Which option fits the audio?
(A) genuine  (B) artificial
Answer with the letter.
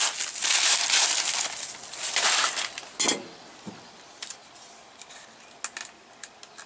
A